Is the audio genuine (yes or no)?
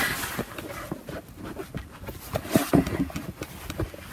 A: yes